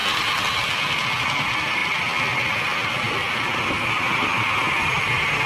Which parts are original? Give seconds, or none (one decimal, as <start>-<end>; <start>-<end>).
0.0-5.5